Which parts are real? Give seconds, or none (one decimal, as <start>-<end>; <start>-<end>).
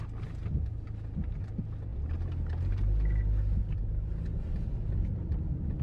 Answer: 0.0-5.8